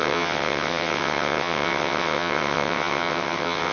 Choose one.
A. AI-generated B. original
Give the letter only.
A